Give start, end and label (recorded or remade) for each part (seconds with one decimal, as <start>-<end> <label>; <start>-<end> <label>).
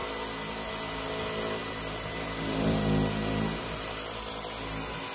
0.0-1.6 recorded; 1.6-3.8 remade; 3.8-5.1 recorded